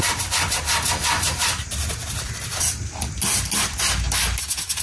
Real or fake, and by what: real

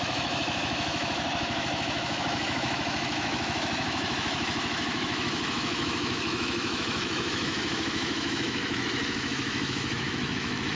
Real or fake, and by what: fake, autoencoder, DAC-VAE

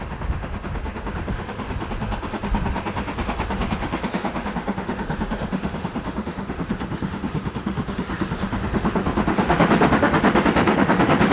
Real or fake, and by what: fake, autoencoder, DAC-VAE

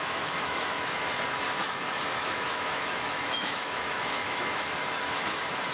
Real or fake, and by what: fake, autoencoder, DAC-VAE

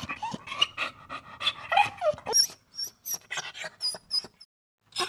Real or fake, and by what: real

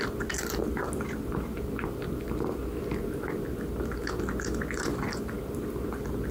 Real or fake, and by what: real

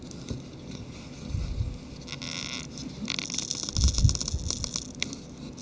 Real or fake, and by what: real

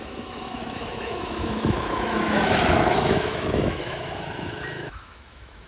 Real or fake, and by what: fake, autoencoder, DAC-VAE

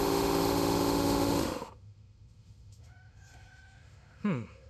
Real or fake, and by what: fake, autoencoder, DAC-VAE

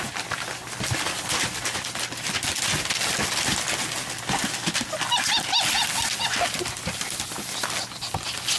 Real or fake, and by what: real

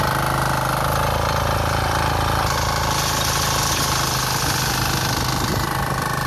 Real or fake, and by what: real